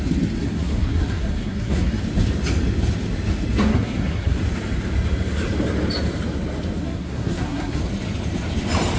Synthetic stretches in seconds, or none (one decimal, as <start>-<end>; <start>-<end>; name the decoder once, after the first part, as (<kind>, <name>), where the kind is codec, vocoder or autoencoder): 0.4-2.0 (codec, SNAC); 3.7-4.4; 6.8-7.8